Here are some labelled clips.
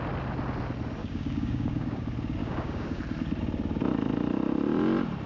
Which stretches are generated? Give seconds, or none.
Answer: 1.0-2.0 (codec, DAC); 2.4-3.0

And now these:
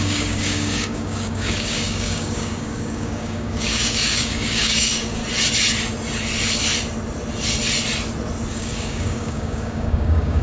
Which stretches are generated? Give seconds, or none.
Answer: 0.0-5.2 (codec, DAC); 8.5-10.4

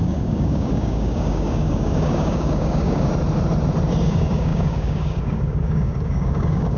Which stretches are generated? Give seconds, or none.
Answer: 0.0-3.1 (codec, DAC); 4.0-6.8

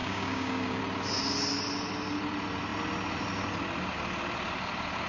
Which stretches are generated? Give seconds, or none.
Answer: 0.0-0.8 (codec, DAC)

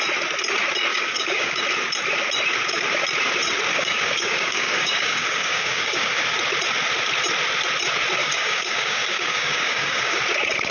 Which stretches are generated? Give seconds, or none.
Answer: 0.9-1.6 (codec, DAC); 3.7-6.2; 8.2-10.2